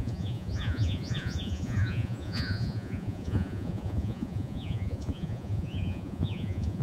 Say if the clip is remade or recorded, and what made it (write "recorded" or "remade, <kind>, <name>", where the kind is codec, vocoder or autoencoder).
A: remade, vocoder, Vocos